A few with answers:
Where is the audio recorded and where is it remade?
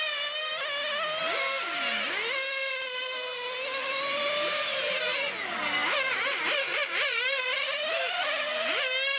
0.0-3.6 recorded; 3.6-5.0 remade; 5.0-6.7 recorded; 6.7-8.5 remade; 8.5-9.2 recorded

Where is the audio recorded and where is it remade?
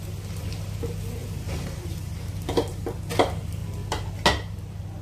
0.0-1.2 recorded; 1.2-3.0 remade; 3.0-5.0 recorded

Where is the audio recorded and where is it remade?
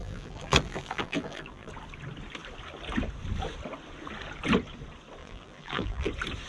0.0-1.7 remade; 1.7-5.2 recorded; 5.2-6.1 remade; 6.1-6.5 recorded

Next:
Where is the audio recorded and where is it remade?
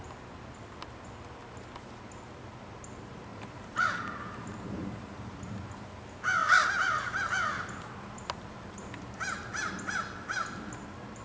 0.0-3.3 recorded; 3.3-5.9 remade; 5.9-11.2 recorded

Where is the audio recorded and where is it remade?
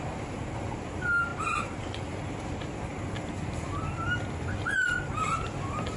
0.0-2.9 remade; 2.9-4.9 recorded; 4.9-6.0 remade